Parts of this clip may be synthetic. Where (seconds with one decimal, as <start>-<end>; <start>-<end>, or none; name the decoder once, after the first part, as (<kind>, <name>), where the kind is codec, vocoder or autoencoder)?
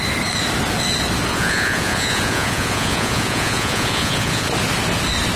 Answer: 1.3-4.5 (vocoder, Vocos)